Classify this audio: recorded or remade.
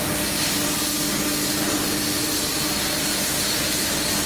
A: recorded